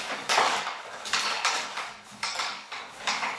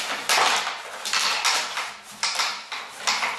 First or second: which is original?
second